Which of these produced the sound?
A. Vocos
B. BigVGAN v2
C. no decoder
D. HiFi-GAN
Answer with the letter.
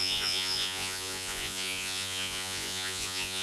A